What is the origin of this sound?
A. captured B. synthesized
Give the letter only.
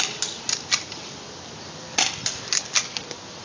A